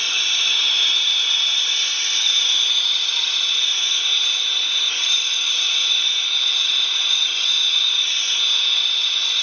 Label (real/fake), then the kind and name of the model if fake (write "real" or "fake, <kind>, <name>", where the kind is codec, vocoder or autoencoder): real